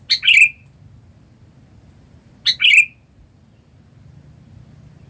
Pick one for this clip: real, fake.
real